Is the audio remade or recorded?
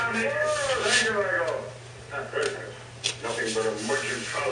recorded